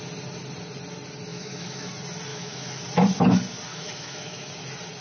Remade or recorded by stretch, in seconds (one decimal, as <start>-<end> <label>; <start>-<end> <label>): 0.0-1.3 recorded; 1.3-1.9 remade; 1.9-2.3 recorded; 2.3-2.8 remade; 2.8-3.7 recorded; 3.7-4.5 remade; 4.5-5.0 recorded